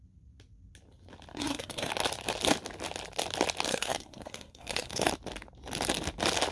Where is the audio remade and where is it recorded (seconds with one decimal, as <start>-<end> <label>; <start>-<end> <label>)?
0.0-1.3 recorded; 1.3-1.9 remade; 1.9-3.7 recorded; 3.7-5.1 remade; 5.1-6.5 recorded